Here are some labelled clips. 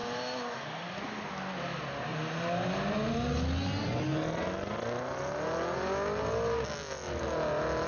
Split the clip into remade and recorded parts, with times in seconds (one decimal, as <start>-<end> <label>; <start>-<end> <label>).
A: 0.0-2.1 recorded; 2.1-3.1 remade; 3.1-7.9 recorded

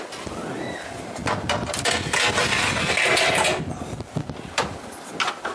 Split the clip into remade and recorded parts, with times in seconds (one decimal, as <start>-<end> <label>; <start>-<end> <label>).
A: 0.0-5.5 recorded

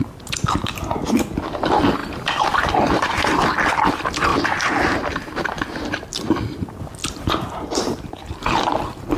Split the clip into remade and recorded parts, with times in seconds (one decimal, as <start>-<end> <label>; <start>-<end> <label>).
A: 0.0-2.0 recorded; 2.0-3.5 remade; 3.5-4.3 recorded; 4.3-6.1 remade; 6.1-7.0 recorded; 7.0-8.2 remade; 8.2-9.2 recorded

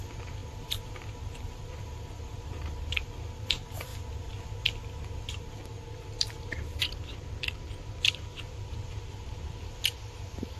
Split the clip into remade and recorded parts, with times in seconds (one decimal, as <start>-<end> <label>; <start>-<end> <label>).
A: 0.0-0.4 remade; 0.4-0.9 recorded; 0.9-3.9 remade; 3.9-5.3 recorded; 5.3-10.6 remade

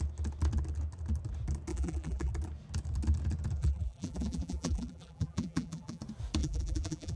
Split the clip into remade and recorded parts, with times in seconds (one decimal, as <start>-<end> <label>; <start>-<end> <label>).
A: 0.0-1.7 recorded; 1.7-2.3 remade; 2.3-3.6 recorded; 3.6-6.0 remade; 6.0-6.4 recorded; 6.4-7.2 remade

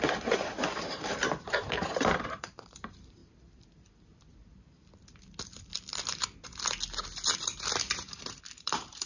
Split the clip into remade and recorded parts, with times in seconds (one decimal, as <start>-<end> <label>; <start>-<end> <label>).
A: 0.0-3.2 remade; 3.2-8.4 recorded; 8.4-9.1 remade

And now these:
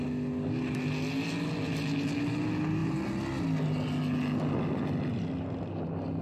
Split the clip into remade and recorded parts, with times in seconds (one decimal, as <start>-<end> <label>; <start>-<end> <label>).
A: 0.0-6.2 recorded